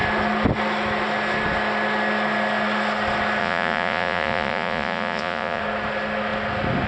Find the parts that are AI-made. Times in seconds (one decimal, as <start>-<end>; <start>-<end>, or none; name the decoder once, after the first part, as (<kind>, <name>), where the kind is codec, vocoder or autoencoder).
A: 3.4-5.6 (vocoder, Vocos)